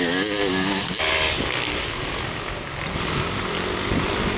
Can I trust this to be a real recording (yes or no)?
yes